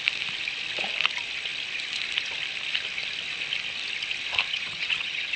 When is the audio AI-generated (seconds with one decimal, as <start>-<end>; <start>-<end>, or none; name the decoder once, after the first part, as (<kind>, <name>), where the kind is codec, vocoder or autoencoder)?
4.5-5.4 (vocoder, HiFi-GAN)